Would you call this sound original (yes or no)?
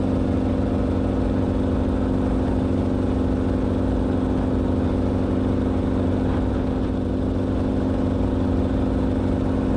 yes